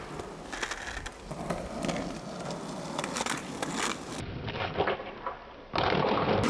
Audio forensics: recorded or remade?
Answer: recorded